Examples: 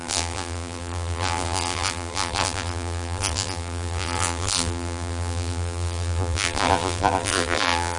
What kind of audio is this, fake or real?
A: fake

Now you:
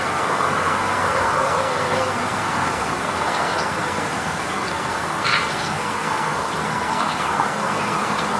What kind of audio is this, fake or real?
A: fake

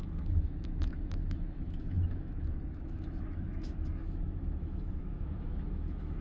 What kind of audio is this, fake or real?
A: fake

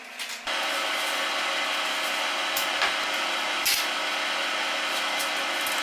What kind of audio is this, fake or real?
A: real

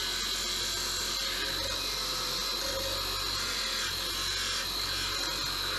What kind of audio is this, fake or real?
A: real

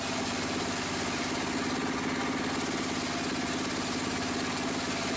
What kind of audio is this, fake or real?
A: real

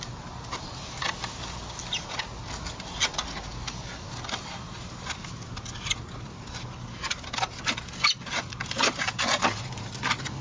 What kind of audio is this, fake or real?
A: real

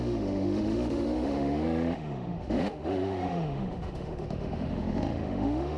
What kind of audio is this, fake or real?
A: fake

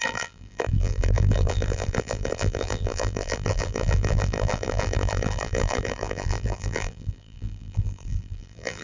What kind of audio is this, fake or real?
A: fake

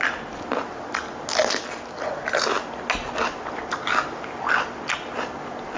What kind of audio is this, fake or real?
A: real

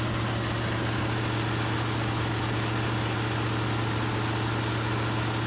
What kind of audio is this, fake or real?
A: real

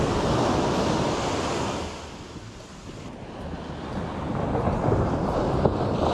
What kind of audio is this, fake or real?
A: real